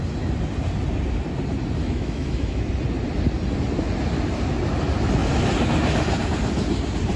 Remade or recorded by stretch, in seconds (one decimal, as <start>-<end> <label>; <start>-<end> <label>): 0.0-1.8 recorded; 1.8-2.7 remade; 2.7-7.2 recorded